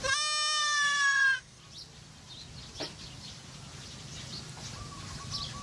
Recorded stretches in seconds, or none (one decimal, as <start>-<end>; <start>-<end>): 0.0-0.6; 1.6-5.6